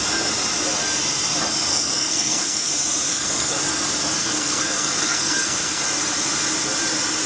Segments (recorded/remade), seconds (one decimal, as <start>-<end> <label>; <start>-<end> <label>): 0.0-1.7 recorded; 1.7-2.7 remade; 2.7-3.1 recorded; 3.1-3.6 remade; 3.6-4.2 recorded; 4.2-5.8 remade; 5.8-7.3 recorded